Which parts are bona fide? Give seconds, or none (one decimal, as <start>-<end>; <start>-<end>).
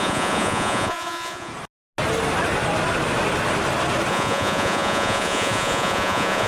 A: 1.5-4.1